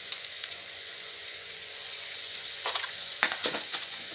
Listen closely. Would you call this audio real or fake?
fake